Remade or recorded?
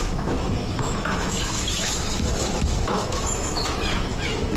remade